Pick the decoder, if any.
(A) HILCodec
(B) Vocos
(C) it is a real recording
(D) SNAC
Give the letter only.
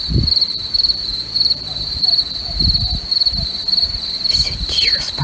C